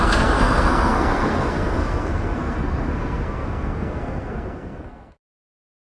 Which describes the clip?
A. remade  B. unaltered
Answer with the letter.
A